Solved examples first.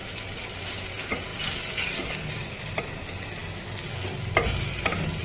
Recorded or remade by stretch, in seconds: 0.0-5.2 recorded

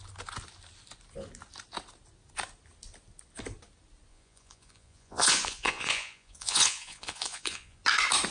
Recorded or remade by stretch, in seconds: 0.0-4.1 recorded; 4.1-7.8 remade; 7.8-8.3 recorded

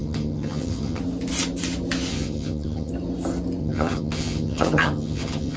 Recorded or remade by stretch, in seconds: 0.0-1.0 remade; 1.0-2.1 recorded; 2.1-2.9 remade; 2.9-3.6 recorded; 3.6-5.6 remade

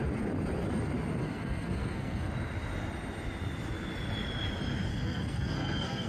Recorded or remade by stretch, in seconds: 0.0-1.2 recorded; 1.2-2.3 remade; 2.3-4.9 recorded; 4.9-6.1 remade

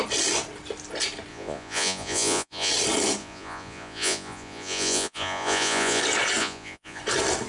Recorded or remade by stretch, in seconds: 0.0-1.3 recorded; 1.3-2.7 remade; 2.7-3.2 recorded; 3.2-6.0 remade; 6.0-6.4 recorded; 6.4-7.0 remade; 7.0-7.5 recorded

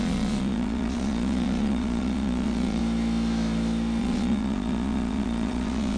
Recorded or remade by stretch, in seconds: 0.0-2.8 remade; 2.8-4.0 recorded; 4.0-6.0 remade